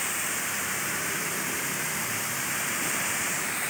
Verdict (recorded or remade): remade